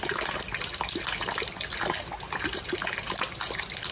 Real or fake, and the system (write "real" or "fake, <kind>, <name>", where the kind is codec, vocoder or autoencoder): real